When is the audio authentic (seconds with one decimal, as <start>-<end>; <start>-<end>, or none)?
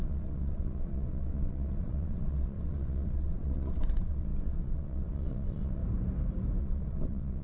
5.8-6.6